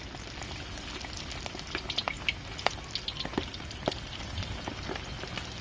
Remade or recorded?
recorded